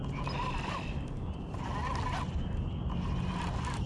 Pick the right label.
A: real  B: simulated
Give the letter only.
A